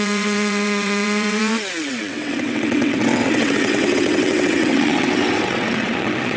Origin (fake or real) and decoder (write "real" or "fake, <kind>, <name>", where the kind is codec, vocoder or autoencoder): fake, vocoder, WaveNeXt